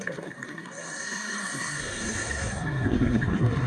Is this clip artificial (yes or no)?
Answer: yes